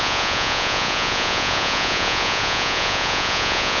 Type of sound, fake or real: fake